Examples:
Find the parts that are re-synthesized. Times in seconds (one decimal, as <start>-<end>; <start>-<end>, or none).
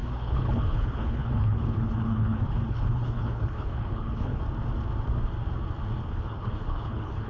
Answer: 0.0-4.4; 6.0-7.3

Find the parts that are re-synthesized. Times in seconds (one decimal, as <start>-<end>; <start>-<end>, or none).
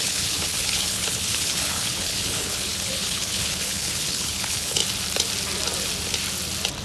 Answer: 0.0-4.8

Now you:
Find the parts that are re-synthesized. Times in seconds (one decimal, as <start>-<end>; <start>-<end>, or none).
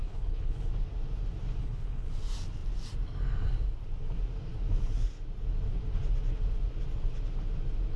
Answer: 0.0-0.7; 1.6-2.1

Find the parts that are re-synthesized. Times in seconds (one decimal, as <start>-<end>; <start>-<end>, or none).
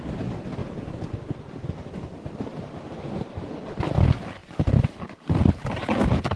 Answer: none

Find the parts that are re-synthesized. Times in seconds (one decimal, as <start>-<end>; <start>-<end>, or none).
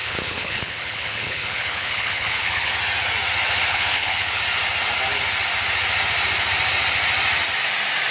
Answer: 0.0-2.7; 3.7-4.4